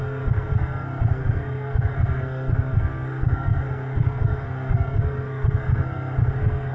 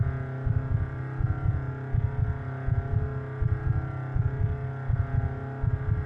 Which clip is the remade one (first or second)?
first